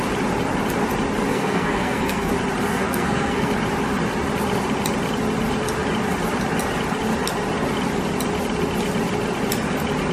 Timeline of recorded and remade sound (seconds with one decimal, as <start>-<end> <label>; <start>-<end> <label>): 0.0-1.3 recorded; 1.3-2.3 remade; 2.3-2.7 recorded; 2.7-3.5 remade; 3.5-10.1 recorded